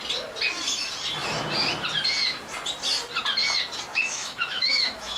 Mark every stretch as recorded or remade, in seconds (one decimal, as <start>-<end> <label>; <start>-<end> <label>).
0.0-3.9 recorded; 3.9-5.2 remade